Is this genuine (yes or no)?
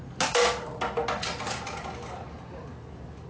yes